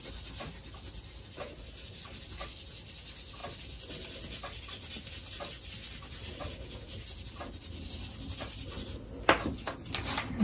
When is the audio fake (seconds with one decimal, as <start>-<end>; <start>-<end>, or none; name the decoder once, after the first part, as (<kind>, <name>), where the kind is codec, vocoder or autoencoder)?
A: none